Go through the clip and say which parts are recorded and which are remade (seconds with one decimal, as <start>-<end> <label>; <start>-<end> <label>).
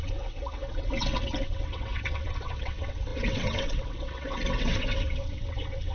0.0-5.9 remade